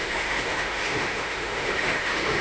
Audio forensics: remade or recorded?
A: remade